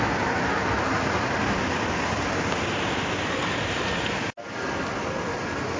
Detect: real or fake real